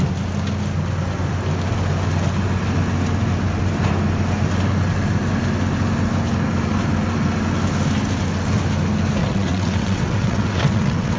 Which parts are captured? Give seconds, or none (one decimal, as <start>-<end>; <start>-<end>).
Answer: 0.0-9.2